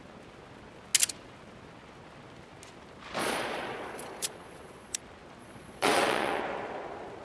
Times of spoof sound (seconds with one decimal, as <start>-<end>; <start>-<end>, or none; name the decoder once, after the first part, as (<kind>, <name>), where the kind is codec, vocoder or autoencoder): 3.2-5.0 (vocoder, Vocos); 5.4-6.4